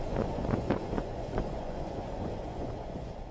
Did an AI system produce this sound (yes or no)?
yes